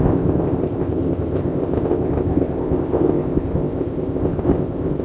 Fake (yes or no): yes